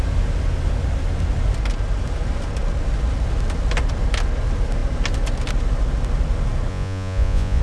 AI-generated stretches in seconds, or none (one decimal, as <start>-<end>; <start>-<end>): 6.7-7.6